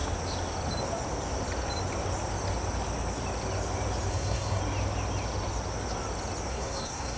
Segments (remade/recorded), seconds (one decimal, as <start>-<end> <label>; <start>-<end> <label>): 0.0-4.1 recorded; 4.1-4.6 remade; 4.6-6.5 recorded; 6.5-7.2 remade